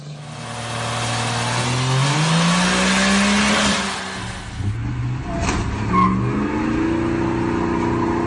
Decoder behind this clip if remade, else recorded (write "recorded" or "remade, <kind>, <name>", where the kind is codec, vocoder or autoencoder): recorded